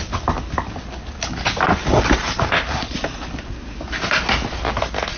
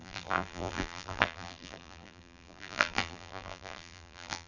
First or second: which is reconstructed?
second